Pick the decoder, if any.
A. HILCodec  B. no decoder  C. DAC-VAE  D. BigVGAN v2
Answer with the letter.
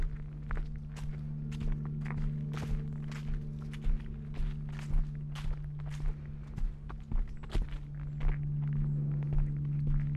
B